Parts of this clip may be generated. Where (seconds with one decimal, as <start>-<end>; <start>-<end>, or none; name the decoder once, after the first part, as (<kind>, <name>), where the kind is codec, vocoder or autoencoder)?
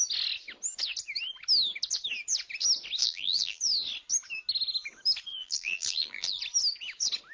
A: 3.0-3.6 (vocoder, BigVGAN v2); 5.3-6.4